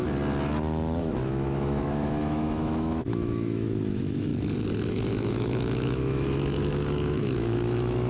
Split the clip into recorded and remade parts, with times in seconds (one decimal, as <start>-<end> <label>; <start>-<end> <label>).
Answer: 0.0-1.0 recorded; 1.0-4.3 remade; 4.3-4.9 recorded; 4.9-8.1 remade